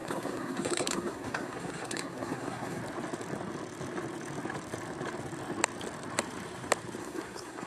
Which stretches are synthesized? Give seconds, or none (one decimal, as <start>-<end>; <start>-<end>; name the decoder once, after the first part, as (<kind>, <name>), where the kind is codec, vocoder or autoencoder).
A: 0.0-2.8 (codec, SNAC); 7.0-7.7